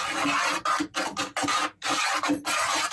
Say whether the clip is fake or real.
real